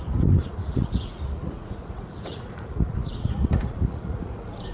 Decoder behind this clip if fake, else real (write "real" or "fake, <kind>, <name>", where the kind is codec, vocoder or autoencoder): fake, vocoder, Vocos